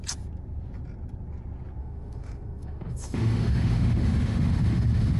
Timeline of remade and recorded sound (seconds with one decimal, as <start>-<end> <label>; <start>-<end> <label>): 0.0-1.8 recorded; 1.8-5.2 remade